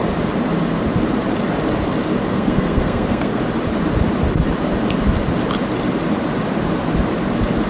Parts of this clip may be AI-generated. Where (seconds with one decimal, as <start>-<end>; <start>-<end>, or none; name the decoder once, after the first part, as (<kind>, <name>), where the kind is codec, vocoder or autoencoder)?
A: 2.3-3.4 (codec, SNAC)